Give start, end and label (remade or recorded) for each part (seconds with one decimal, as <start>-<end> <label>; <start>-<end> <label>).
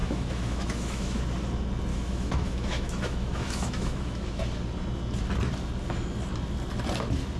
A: 0.0-1.2 remade; 1.2-1.9 recorded; 1.9-4.4 remade; 4.4-7.4 recorded